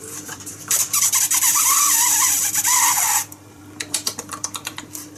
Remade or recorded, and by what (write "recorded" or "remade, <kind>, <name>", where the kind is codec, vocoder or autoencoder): remade, vocoder, BigVGAN v2